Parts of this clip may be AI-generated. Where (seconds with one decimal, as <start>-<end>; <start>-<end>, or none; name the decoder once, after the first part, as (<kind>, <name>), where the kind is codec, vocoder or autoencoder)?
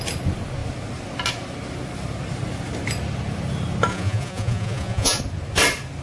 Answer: 3.9-5.2 (vocoder, Vocos)